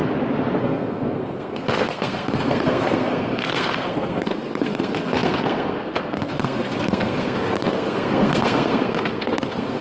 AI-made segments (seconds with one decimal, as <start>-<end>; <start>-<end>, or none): 0.6-9.8